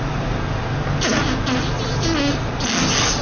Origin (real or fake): real